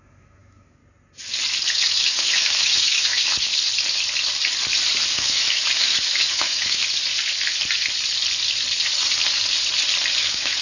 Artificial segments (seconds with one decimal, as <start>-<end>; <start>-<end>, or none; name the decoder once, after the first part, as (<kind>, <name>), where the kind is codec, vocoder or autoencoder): 0.0-0.8 (autoencoder, DAC-VAE); 1.7-3.5; 5.1-6.8; 10.1-10.6